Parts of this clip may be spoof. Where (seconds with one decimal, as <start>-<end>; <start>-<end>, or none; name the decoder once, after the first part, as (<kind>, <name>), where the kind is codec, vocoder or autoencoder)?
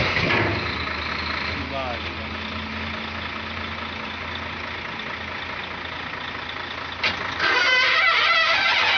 none